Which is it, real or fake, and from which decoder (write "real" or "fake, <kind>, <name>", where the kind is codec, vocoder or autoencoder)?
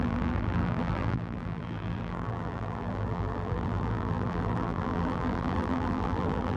fake, vocoder, BigVGAN v2